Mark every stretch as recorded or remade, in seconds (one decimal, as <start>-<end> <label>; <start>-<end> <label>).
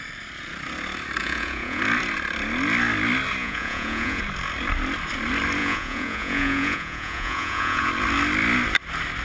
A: 0.0-1.2 recorded; 1.2-1.8 remade; 1.8-3.4 recorded; 3.4-4.2 remade; 4.2-5.6 recorded; 5.6-7.9 remade; 7.9-9.2 recorded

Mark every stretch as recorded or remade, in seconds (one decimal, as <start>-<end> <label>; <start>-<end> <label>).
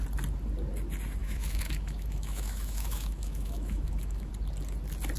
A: 0.0-1.2 recorded; 1.2-4.3 remade; 4.3-5.2 recorded